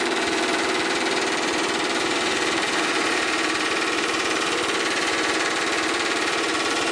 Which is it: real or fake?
fake